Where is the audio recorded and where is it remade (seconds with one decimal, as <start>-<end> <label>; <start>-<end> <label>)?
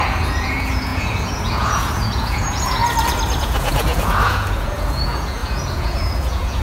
0.0-2.8 remade; 2.8-3.4 recorded; 3.4-6.6 remade